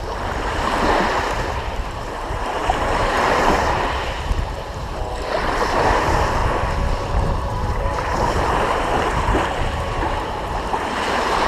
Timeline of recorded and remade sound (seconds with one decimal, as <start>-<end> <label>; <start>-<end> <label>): 0.0-6.4 remade; 6.4-7.1 recorded; 7.1-11.5 remade